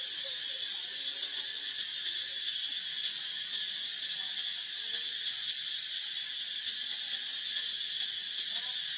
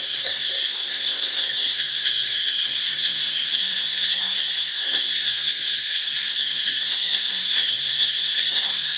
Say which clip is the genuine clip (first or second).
first